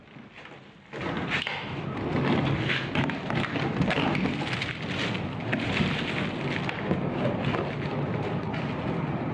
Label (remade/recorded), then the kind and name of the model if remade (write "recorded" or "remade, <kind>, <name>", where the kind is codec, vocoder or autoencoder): recorded